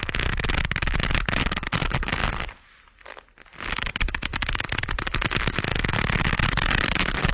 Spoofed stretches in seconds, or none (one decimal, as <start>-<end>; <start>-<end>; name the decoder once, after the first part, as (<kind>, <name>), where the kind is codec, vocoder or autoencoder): none